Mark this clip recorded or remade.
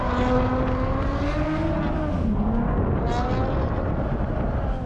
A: recorded